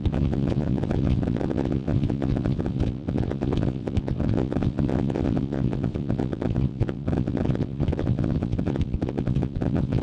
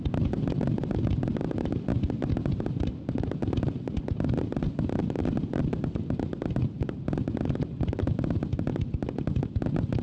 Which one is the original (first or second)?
second